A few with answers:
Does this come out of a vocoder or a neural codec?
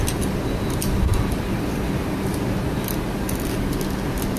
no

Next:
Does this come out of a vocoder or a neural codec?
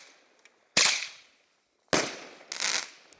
no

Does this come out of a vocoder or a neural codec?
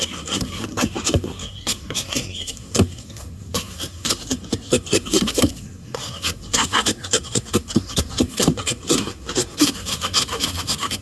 yes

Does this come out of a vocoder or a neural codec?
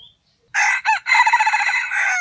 no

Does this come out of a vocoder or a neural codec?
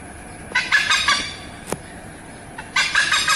no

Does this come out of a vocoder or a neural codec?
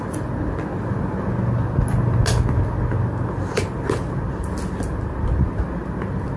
no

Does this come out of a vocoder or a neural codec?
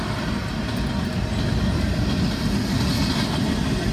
no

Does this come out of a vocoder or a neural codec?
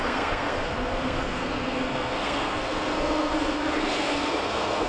yes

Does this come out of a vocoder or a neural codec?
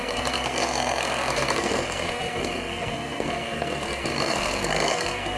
yes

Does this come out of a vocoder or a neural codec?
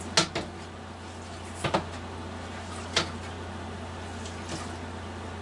no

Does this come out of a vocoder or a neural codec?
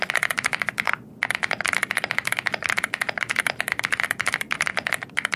no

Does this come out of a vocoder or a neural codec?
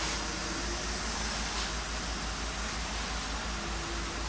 no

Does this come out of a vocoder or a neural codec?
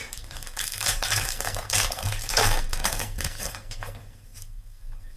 yes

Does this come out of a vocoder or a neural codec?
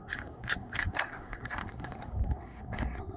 yes